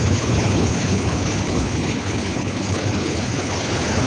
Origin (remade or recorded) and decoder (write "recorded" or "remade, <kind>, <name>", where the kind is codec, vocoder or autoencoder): remade, codec, HILCodec